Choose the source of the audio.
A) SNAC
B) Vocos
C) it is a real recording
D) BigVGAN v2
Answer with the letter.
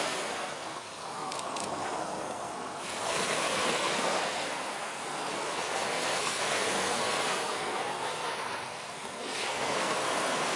A